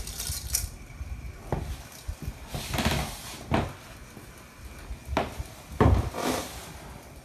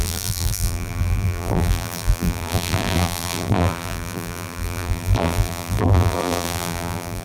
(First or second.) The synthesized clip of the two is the second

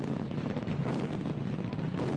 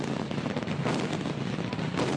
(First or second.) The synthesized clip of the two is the first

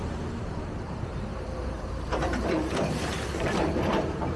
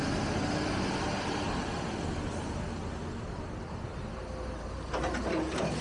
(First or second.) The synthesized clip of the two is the first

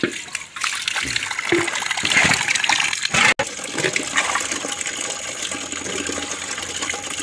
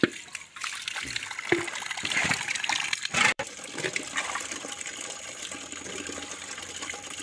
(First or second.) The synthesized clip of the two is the second